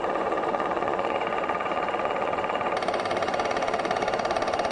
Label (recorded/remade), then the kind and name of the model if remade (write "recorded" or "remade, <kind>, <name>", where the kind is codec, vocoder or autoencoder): remade, vocoder, Vocos